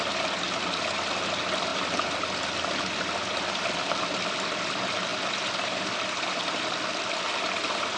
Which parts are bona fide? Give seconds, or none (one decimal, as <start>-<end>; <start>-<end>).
none